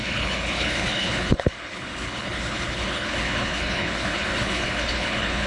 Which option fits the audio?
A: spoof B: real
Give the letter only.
A